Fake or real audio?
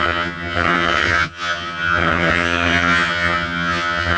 fake